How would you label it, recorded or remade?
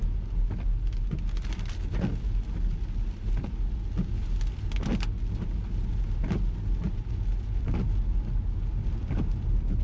recorded